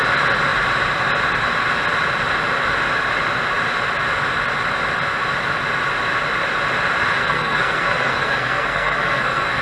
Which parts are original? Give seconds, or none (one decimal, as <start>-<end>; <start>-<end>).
0.0-7.2